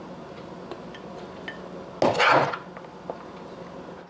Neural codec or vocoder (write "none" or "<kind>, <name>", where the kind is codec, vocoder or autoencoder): none